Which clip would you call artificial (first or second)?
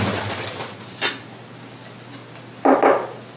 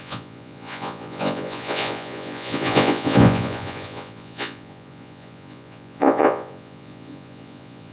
second